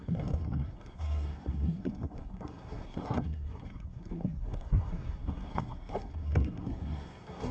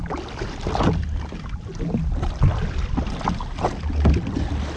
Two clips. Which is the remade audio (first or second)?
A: first